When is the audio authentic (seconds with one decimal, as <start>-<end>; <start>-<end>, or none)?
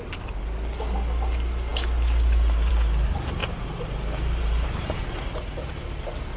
0.0-3.4; 5.7-6.4